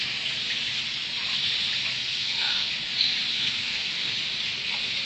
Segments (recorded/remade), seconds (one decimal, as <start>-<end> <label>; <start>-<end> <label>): 0.0-2.0 recorded; 2.0-2.7 remade; 2.7-3.3 recorded; 3.3-4.1 remade; 4.1-5.0 recorded